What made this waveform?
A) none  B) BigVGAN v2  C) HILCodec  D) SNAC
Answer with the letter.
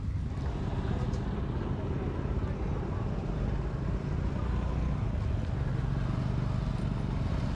A